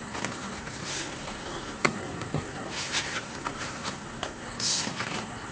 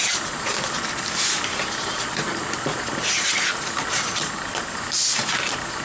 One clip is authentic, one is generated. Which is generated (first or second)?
first